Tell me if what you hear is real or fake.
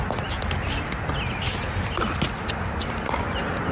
real